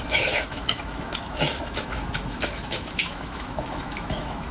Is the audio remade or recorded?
remade